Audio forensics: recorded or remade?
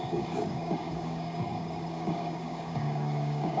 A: remade